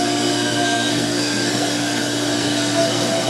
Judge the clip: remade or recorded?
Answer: remade